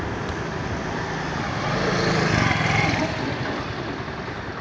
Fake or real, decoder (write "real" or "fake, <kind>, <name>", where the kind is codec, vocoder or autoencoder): real